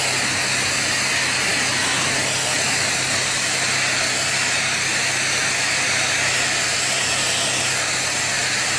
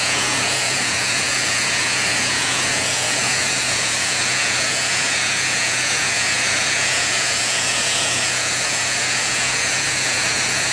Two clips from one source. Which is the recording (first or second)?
first